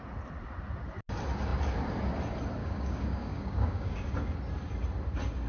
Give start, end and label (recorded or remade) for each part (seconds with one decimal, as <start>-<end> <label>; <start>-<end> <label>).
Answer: 0.0-2.6 recorded; 2.6-4.1 remade; 4.1-5.5 recorded